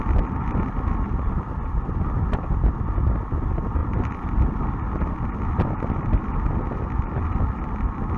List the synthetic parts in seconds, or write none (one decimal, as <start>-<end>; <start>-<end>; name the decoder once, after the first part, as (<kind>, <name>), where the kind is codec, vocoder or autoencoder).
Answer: none